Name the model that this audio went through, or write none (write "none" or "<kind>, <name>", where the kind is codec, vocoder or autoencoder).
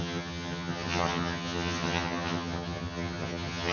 vocoder, HiFi-GAN